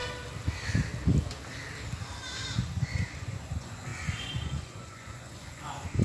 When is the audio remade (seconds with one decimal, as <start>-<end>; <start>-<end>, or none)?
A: 2.6-6.0

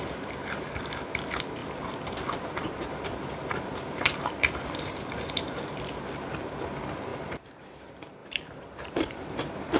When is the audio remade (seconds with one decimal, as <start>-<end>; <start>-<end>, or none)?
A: 0.4-1.0; 1.6-6.0; 7.1-7.6; 8.2-9.4

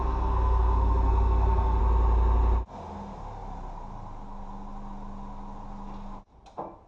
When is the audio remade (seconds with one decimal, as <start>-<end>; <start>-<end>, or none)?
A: 0.0-1.8

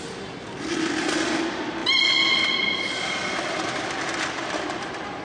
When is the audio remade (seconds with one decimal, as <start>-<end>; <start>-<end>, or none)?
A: 1.8-5.2